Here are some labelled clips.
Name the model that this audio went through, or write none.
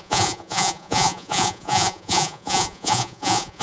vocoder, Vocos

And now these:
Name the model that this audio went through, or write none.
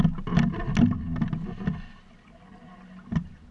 none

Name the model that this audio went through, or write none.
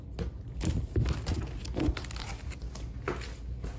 none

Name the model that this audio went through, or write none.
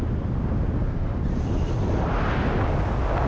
none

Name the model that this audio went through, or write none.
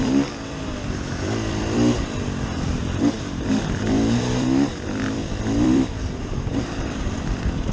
vocoder, BigVGAN v2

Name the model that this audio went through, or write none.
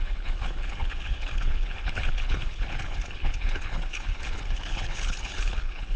codec, HILCodec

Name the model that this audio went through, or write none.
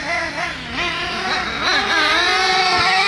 none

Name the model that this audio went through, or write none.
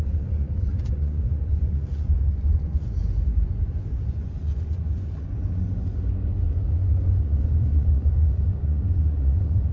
vocoder, Vocos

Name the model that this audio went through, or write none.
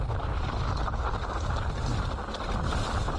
none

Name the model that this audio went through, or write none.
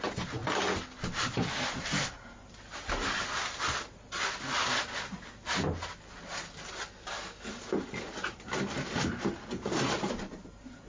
none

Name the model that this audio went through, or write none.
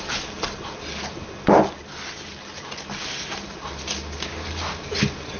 none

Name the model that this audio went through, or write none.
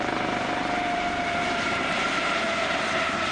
vocoder, BigVGAN v2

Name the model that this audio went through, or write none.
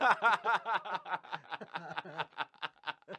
none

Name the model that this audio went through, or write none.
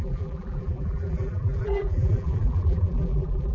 vocoder, BigVGAN v2